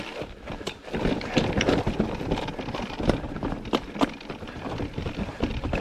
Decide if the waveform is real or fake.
real